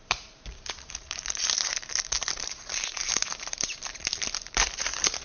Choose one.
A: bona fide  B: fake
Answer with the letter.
B